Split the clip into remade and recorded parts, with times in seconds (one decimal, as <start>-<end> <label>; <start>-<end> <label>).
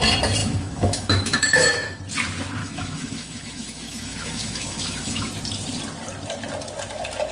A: 0.0-0.4 recorded; 0.4-2.0 remade; 2.0-2.6 recorded; 2.6-5.3 remade; 5.3-7.3 recorded